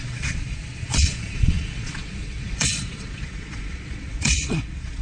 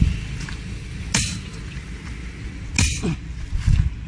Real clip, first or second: second